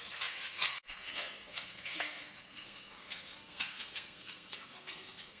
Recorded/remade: remade